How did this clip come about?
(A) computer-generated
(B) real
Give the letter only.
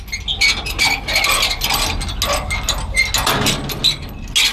B